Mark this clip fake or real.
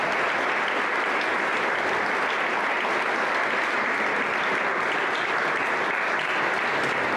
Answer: real